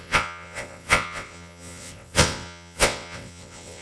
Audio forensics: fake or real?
fake